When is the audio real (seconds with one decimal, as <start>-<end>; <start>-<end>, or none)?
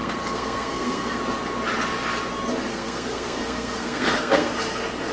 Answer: 1.2-2.7; 4.5-5.1